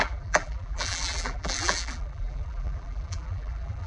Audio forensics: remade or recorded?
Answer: remade